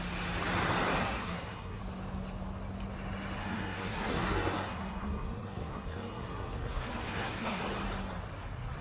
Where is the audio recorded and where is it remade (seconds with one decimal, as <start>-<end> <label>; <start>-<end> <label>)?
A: 0.0-1.0 recorded; 1.0-1.8 remade; 1.8-3.4 recorded; 3.4-7.6 remade; 7.6-8.8 recorded